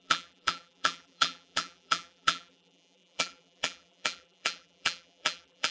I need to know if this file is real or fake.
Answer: fake